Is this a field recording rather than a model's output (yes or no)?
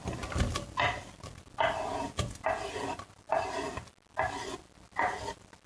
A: yes